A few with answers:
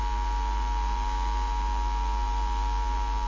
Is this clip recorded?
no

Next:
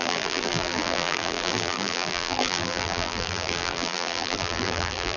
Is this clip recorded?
no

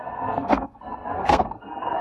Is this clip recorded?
no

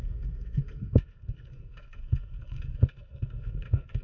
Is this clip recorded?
no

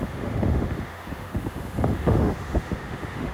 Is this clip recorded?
no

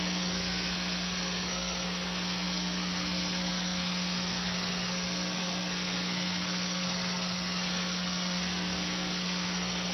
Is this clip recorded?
no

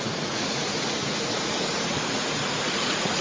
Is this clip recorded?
no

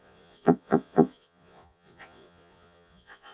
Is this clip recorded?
no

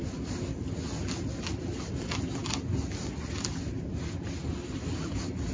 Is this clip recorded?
yes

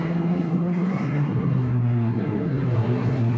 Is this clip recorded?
no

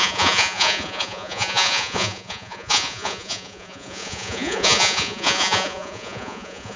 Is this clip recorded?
no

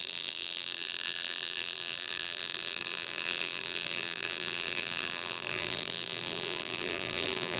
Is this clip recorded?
no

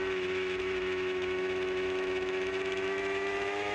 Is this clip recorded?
no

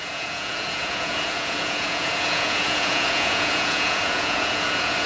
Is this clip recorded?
no